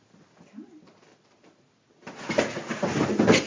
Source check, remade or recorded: recorded